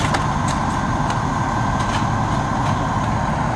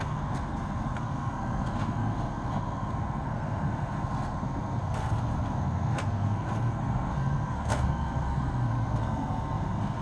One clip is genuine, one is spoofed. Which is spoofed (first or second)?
second